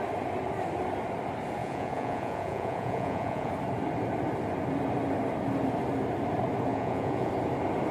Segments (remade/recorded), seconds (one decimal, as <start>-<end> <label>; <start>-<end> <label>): 0.0-1.6 recorded; 1.6-3.5 remade; 3.5-6.7 recorded; 6.7-7.3 remade; 7.3-7.9 recorded